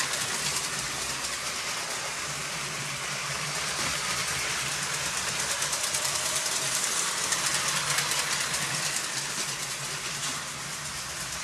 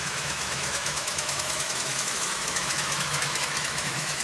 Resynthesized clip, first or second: second